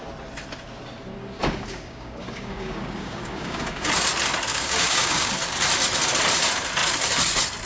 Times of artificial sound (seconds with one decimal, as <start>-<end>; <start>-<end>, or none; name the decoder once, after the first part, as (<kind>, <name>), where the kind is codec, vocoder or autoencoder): 1.2-3.9 (codec, DAC); 4.5-5.3